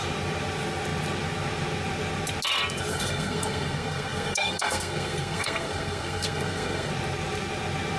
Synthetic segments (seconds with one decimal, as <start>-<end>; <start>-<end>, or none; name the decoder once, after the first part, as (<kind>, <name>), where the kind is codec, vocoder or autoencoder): 2.9-6.9 (codec, SNAC)

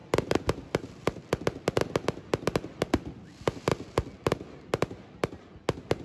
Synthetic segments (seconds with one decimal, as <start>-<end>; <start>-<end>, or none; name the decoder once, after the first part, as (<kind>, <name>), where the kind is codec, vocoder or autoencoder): none

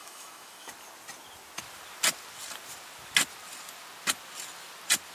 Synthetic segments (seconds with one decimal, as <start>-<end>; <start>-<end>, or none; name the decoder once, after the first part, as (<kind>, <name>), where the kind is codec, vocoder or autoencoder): 0.0-0.7 (autoencoder, DAC-VAE)

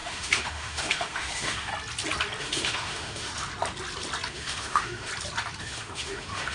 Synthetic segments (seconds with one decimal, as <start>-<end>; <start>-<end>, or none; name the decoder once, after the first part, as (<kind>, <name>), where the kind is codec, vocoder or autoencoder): 0.0-1.7 (autoencoder, DAC-VAE); 2.4-3.3; 4.3-5.1; 5.6-6.5

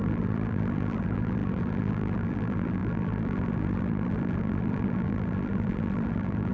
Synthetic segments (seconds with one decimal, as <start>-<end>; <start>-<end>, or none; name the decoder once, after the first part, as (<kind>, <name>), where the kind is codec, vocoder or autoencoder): 0.0-6.5 (vocoder, BigVGAN v2)

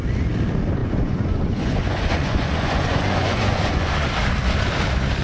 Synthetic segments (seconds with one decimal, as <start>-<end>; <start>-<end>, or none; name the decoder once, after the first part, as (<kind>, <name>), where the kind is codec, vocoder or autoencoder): 0.8-3.9 (vocoder, Vocos)